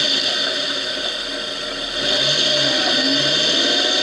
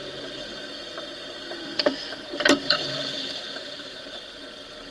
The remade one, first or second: second